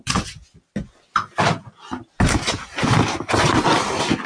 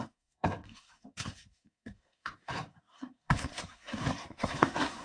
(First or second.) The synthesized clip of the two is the second